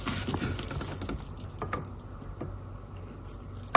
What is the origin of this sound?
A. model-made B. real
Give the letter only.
B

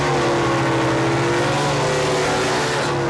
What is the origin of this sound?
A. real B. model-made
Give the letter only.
A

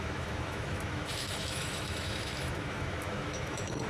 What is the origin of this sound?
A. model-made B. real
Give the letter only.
A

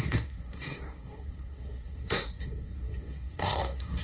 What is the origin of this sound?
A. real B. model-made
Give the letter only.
B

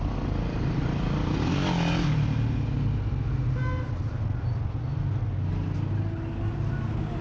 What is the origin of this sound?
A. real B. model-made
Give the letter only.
A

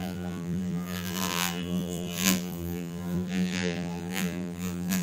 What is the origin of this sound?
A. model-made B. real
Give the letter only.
A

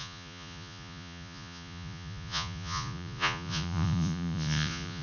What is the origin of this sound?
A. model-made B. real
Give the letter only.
A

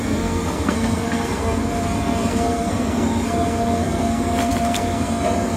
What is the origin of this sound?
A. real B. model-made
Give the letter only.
B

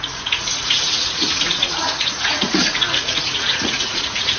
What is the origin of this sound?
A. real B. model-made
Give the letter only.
B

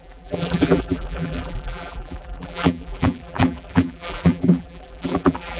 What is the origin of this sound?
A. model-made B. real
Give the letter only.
A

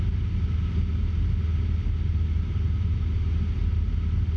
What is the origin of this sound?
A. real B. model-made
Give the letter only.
A